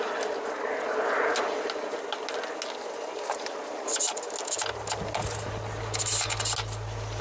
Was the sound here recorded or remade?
recorded